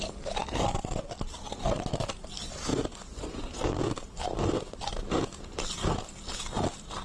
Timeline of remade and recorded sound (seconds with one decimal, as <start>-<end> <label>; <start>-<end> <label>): 0.0-2.7 recorded; 2.7-3.4 remade; 3.4-7.0 recorded

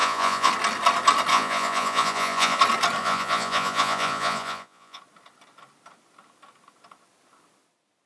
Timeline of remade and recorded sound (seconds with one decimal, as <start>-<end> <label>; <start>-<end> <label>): 0.0-0.5 remade; 0.5-1.3 recorded; 1.3-2.6 remade; 2.6-3.0 recorded; 3.0-5.0 remade; 5.0-8.1 recorded

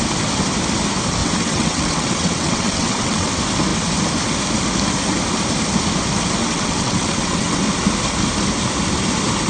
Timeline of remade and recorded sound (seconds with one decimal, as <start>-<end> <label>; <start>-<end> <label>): 0.0-1.2 recorded; 1.2-3.3 remade; 3.3-6.4 recorded; 6.4-7.6 remade; 7.6-9.5 recorded

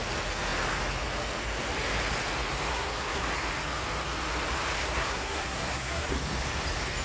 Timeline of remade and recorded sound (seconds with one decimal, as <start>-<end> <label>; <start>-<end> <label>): 0.0-2.7 recorded; 2.7-3.3 remade; 3.3-4.8 recorded; 4.8-6.1 remade; 6.1-7.0 recorded

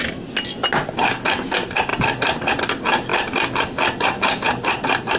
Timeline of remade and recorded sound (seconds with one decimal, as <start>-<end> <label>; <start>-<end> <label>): 0.0-5.2 recorded

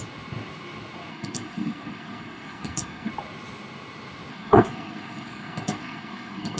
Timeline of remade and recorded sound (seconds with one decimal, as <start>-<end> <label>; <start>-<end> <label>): 0.0-1.1 recorded; 1.1-3.1 remade; 3.1-4.3 recorded; 4.3-6.6 remade